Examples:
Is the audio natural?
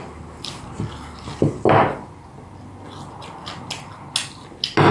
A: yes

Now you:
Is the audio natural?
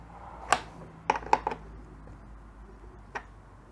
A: yes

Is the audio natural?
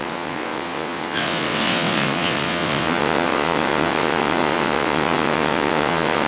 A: no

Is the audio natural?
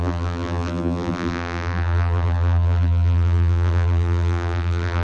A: no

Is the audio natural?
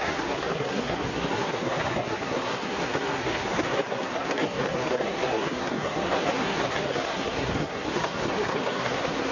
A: no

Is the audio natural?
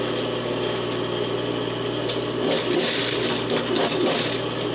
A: yes